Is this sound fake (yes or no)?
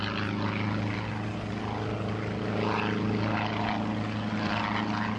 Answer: no